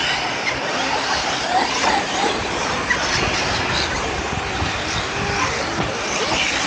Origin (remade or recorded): recorded